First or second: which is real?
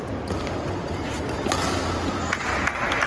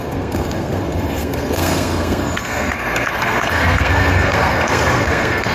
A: first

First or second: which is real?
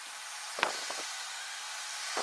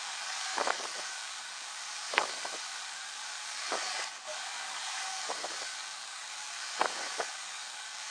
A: first